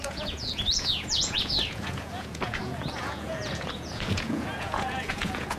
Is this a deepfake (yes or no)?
yes